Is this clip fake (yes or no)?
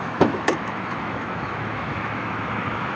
yes